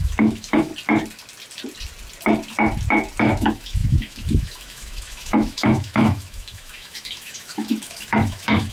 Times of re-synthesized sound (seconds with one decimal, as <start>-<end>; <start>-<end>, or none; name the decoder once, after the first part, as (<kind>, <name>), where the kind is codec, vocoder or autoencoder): 0.0-0.7 (autoencoder, DAC-VAE); 3.2-8.7